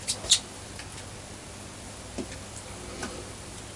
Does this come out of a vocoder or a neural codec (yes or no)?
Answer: no